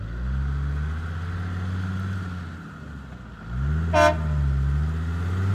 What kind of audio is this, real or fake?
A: real